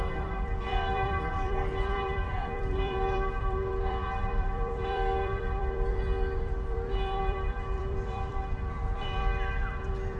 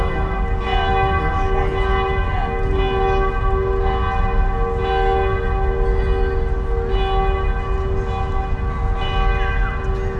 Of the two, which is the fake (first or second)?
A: first